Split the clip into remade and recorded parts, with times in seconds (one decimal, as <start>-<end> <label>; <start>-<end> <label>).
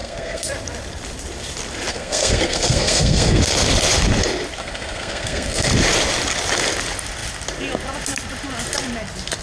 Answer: 0.0-0.5 remade; 0.5-1.9 recorded; 1.9-3.4 remade; 3.4-4.6 recorded; 4.6-5.7 remade; 5.7-9.4 recorded